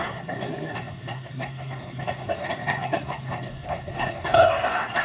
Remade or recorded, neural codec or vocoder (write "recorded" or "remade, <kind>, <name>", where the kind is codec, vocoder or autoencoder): remade, codec, SNAC